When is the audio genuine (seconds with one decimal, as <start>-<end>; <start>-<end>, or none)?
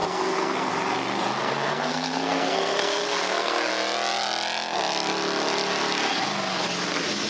0.7-1.4; 3.7-7.3